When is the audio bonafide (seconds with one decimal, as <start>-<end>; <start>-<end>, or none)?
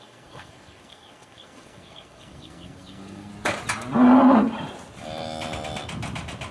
3.3-6.5